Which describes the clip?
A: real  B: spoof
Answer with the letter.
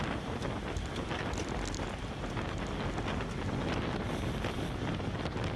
A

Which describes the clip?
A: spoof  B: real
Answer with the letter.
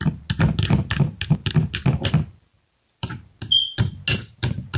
B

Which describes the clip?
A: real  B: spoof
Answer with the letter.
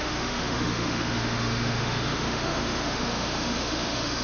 B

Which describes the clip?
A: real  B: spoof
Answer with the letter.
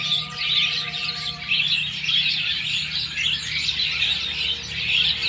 A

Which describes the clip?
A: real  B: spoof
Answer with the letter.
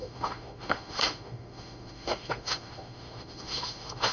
B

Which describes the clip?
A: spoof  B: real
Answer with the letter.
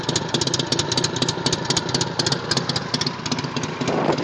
B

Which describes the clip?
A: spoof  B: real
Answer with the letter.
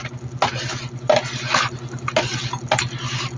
B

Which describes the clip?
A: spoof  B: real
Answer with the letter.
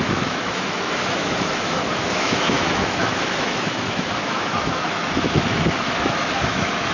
A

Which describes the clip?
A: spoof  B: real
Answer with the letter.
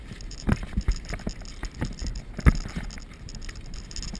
B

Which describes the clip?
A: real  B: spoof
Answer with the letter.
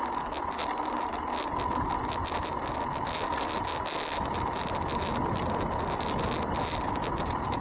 A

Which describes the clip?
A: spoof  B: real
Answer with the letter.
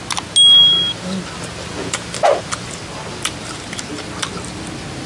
B